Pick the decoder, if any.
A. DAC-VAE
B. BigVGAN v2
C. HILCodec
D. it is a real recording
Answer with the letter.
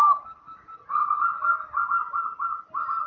D